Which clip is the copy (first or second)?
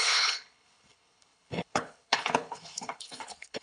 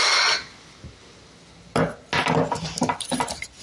first